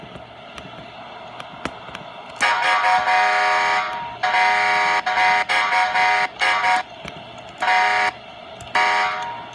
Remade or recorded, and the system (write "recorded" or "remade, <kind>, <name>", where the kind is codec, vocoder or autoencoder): recorded